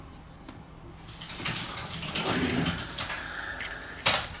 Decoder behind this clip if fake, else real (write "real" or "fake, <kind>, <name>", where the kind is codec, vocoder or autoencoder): real